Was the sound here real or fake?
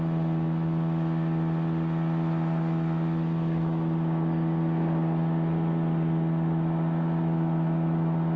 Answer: real